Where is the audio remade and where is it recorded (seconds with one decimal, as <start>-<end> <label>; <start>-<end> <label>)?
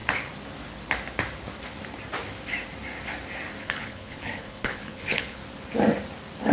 0.0-3.6 recorded; 3.6-5.4 remade; 5.4-6.5 recorded